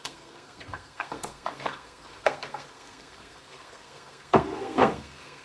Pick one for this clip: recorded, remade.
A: remade